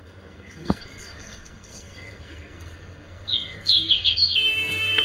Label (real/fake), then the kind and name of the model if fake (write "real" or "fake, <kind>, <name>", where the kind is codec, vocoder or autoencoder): fake, codec, SNAC